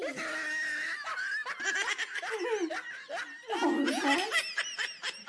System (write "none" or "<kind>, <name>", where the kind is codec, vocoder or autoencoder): none